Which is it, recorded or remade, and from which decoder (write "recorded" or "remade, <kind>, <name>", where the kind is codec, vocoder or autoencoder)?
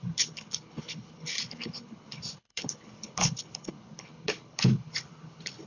remade, codec, HILCodec